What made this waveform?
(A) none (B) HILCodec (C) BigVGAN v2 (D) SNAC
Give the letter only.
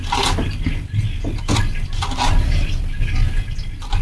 A